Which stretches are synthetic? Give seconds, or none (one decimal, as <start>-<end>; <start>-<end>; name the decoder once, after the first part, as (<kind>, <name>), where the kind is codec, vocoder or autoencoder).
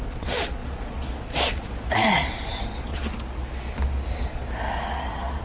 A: 0.0-3.1 (vocoder, Vocos); 4.1-5.4